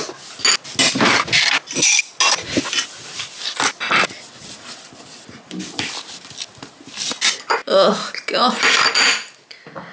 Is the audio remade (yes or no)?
no